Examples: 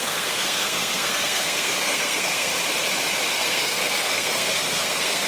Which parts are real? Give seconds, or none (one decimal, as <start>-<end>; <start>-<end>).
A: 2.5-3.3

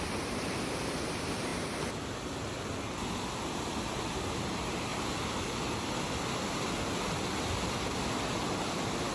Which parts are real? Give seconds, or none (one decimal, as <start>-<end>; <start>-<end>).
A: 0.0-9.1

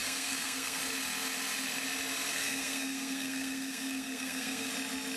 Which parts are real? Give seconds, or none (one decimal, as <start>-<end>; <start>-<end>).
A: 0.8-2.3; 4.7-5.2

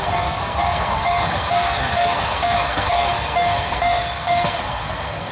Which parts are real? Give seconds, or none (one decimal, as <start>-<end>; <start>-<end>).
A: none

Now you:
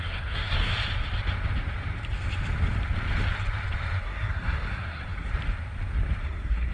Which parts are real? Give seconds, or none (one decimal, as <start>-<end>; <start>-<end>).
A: 0.7-4.0; 5.3-6.2